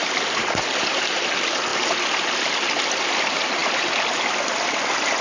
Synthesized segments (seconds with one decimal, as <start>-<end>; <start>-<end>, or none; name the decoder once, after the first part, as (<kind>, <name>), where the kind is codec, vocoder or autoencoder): 0.0-1.2 (vocoder, BigVGAN v2)